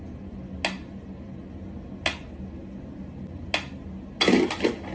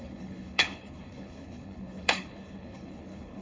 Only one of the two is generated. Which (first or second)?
second